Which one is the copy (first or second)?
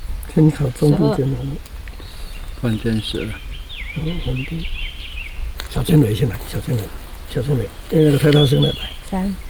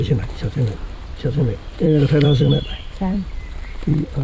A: second